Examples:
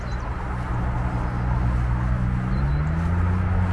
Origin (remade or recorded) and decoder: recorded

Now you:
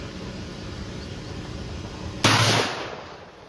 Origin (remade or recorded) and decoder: recorded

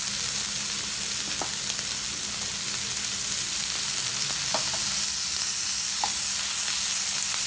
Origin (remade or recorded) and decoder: recorded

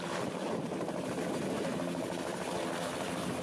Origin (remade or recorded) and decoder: remade, vocoder, BigVGAN v2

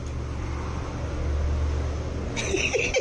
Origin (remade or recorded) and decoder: recorded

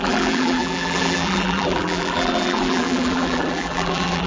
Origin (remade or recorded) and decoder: remade, vocoder, BigVGAN v2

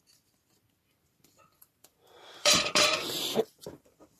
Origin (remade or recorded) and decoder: remade, vocoder, BigVGAN v2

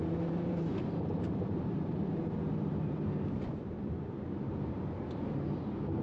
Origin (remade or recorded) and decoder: remade, vocoder, BigVGAN v2